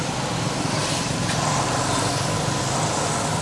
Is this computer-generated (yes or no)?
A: no